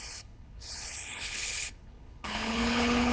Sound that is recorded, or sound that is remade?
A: remade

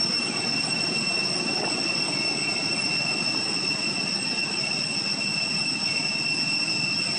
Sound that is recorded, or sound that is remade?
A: recorded